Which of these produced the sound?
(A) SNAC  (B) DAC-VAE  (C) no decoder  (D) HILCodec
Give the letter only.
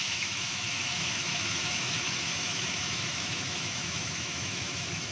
B